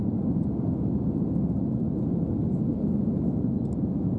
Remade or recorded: recorded